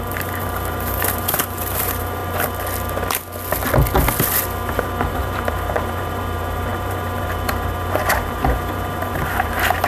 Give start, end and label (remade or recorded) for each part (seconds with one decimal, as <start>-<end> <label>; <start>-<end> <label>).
0.0-2.2 remade; 2.2-5.1 recorded; 5.1-9.9 remade